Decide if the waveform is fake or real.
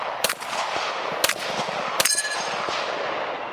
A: fake